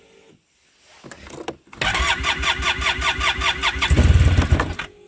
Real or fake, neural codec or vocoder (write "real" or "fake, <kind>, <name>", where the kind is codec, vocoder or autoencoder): real